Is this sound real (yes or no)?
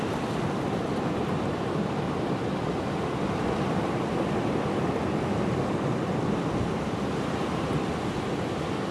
yes